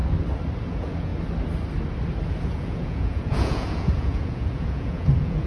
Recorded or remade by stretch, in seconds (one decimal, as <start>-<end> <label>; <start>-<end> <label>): 0.0-0.7 recorded; 0.7-1.1 remade; 1.1-2.4 recorded; 2.4-5.5 remade